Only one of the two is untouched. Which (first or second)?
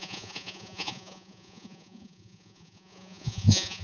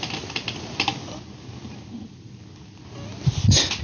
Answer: second